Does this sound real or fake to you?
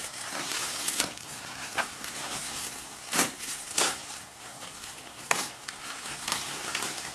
fake